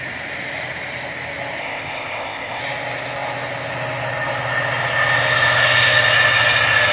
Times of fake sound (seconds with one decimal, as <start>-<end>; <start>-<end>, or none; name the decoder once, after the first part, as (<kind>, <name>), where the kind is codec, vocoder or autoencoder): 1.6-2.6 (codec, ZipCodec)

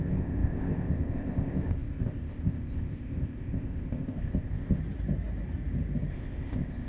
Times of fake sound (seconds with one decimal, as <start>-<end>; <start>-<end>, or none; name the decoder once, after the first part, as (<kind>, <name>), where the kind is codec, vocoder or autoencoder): 0.0-4.8 (codec, ZipCodec); 6.1-6.9

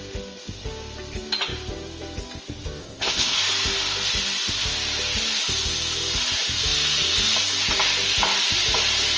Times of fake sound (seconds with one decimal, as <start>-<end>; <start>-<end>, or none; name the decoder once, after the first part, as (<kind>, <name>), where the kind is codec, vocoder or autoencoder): 2.8-3.4 (codec, ZipCodec)